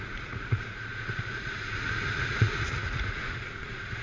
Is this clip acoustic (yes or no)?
no